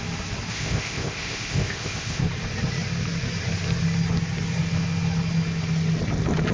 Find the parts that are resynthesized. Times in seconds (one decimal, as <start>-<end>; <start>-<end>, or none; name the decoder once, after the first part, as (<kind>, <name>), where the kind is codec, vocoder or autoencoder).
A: 0.5-2.2 (codec, ZipCodec)